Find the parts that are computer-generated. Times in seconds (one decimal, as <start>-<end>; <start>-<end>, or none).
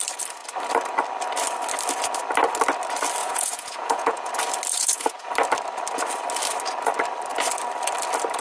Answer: 3.2-4.3; 4.7-5.3